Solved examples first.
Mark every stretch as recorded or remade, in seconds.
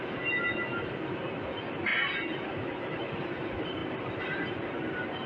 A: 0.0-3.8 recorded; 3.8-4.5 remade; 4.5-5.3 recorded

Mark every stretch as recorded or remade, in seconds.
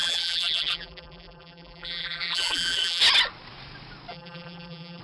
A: 0.0-3.0 remade; 3.0-4.1 recorded; 4.1-5.0 remade